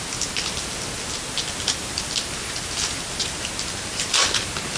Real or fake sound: real